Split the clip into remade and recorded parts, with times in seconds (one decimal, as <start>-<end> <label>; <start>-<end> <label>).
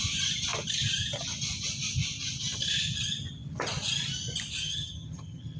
0.0-4.6 recorded; 4.6-5.6 remade